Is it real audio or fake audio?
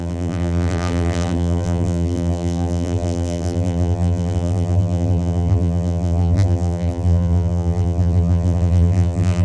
fake